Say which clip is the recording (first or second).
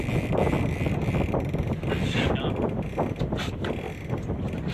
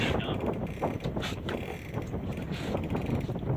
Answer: first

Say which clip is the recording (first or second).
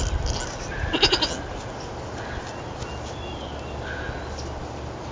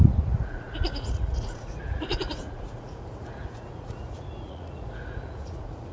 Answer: first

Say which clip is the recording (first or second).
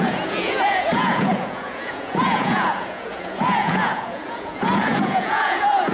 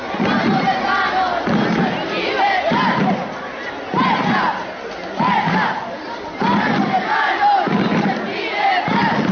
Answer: second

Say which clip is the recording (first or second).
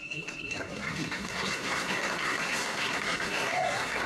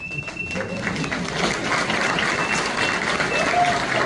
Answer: second